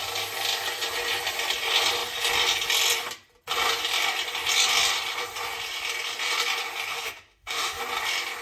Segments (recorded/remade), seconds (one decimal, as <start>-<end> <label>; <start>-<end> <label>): 0.0-6.9 recorded; 6.9-7.8 remade; 7.8-8.4 recorded